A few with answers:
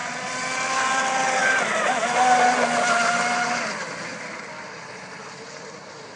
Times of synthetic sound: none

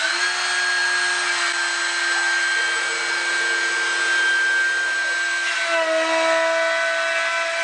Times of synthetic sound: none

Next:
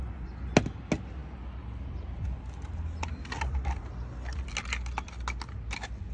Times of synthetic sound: none

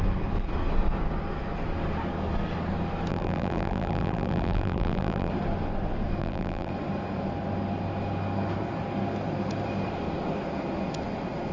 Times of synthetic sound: 3.1-5.3 (vocoder, BigVGAN v2); 6.2-6.7

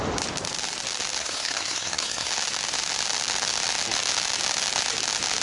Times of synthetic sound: 1.2-2.3 (codec, SNAC)

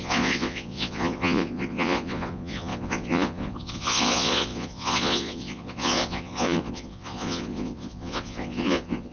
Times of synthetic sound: 0.0-9.1 (vocoder, Vocos)